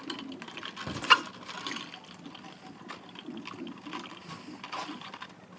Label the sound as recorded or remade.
recorded